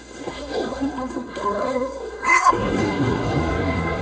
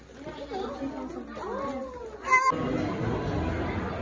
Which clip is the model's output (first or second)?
first